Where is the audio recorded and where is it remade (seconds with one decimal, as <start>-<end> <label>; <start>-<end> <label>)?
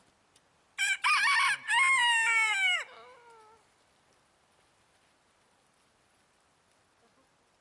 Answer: 0.0-7.6 recorded